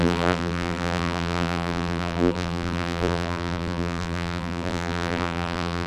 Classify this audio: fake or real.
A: fake